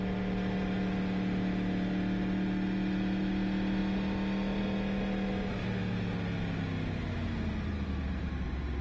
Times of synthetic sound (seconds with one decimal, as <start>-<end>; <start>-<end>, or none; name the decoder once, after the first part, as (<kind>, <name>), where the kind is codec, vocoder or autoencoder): none

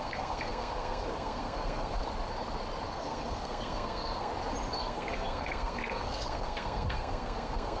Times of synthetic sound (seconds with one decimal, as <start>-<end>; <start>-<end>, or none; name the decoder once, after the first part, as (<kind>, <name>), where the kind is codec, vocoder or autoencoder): 0.0-2.0 (codec, SNAC); 2.9-4.3; 4.8-7.8

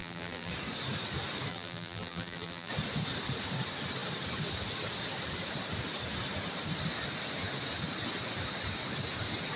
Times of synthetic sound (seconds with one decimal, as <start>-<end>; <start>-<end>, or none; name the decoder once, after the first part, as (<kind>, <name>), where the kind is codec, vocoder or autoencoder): 0.0-0.5 (vocoder, BigVGAN v2); 1.5-2.7

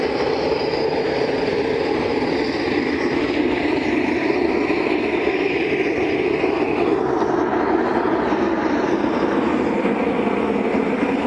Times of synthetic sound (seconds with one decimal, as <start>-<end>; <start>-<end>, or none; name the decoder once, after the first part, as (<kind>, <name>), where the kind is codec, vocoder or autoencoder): 1.5-5.2 (vocoder, BigVGAN v2); 7.9-9.2

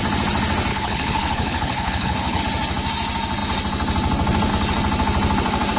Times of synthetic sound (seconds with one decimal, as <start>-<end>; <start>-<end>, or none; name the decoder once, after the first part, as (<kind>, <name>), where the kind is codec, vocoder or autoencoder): 0.7-2.4 (codec, HILCodec)

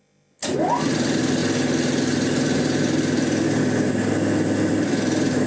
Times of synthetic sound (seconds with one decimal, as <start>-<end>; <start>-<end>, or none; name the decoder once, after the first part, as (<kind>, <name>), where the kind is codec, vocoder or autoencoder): none

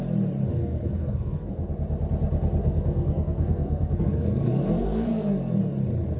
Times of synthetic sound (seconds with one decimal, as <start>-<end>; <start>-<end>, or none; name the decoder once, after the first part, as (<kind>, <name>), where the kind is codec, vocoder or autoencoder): 0.5-1.7 (codec, SNAC); 2.6-5.6

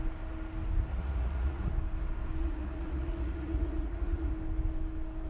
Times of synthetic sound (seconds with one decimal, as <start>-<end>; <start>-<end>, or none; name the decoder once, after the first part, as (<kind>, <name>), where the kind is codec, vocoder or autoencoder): 0.9-1.7 (vocoder, Vocos); 2.4-4.3